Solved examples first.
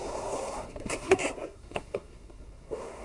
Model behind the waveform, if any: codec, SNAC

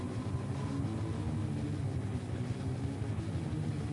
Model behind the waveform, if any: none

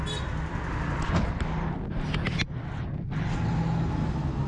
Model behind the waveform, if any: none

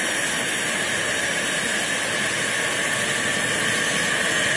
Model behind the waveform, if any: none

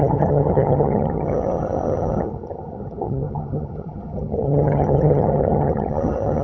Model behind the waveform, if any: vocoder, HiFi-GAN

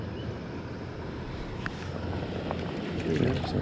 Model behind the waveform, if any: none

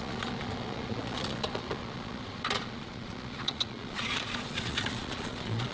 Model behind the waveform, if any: vocoder, Vocos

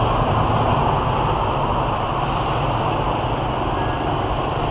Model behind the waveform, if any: none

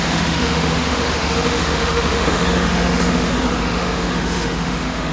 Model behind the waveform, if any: autoencoder, DAC-VAE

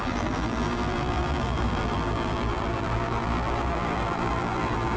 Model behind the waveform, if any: vocoder, BigVGAN v2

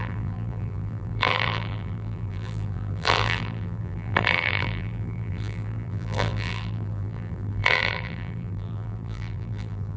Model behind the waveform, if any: vocoder, BigVGAN v2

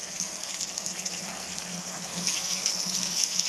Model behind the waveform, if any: codec, SNAC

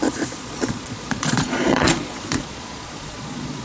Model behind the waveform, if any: vocoder, Vocos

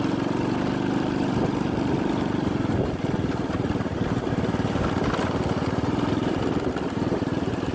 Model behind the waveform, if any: none